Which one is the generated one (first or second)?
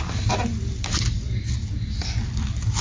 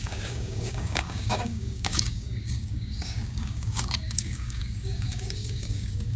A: second